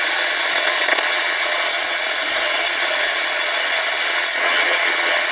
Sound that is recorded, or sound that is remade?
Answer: remade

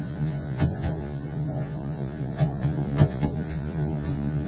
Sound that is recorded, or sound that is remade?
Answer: remade